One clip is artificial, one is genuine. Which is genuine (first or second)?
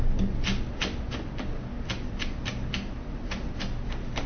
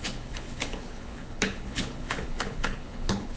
first